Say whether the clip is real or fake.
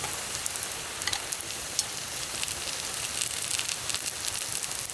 real